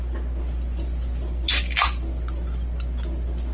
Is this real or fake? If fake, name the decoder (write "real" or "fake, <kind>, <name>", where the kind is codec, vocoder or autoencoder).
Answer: real